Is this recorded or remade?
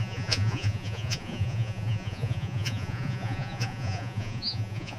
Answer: remade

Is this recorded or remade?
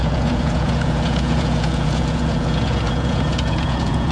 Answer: remade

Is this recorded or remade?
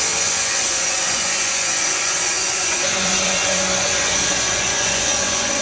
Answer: remade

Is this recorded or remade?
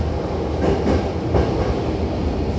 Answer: recorded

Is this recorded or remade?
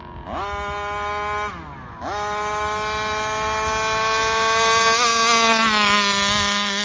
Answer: recorded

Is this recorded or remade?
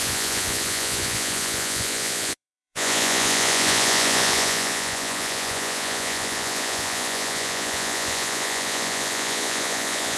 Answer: remade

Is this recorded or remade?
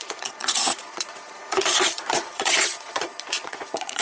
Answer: remade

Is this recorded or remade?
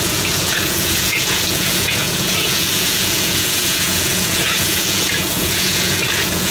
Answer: remade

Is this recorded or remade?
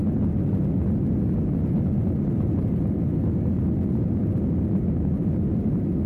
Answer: recorded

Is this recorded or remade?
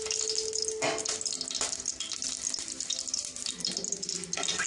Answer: recorded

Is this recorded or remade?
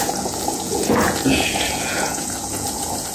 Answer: remade